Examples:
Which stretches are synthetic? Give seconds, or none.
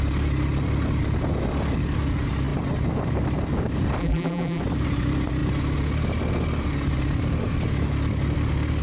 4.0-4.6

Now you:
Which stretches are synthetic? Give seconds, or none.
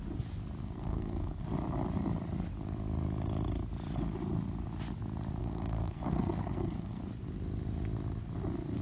0.6-1.5; 5.4-7.0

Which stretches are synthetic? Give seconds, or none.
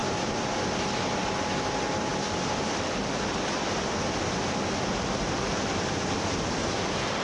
none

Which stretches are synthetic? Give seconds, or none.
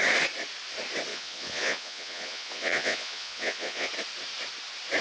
1.1-3.9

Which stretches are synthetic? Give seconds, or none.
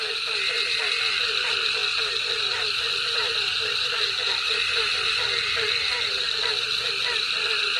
1.8-4.5